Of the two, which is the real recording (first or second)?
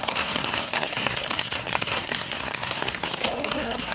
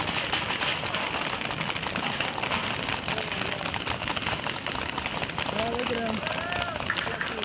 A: second